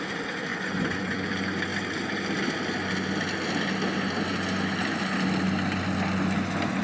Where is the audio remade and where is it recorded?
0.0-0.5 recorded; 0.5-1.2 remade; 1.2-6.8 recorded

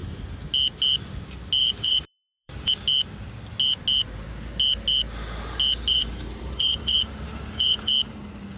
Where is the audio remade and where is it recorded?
0.0-1.6 recorded; 1.6-2.7 remade; 2.7-5.9 recorded; 5.9-7.9 remade; 7.9-8.6 recorded

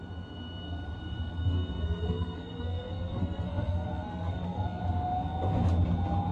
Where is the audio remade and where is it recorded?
0.0-1.4 recorded; 1.4-4.8 remade; 4.8-6.3 recorded

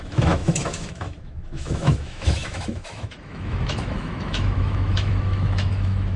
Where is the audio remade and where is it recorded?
0.0-6.2 remade

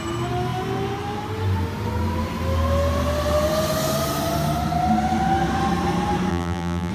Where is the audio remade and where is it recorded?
0.0-6.3 recorded; 6.3-6.9 remade